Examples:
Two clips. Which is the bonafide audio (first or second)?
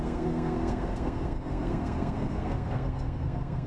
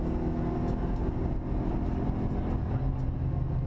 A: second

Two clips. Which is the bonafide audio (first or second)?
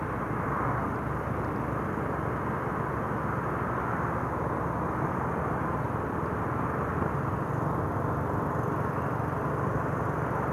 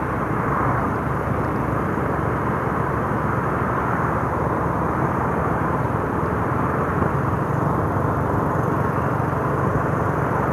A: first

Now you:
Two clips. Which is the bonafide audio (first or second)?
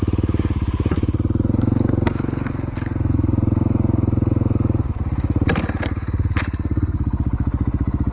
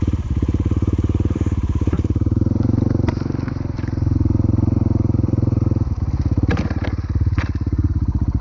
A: first